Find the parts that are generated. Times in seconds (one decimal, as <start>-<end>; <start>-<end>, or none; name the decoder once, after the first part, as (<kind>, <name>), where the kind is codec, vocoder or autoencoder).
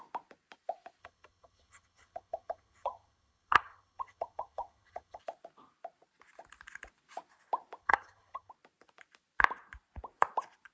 1.0-5.2 (vocoder, HiFi-GAN); 7.8-8.5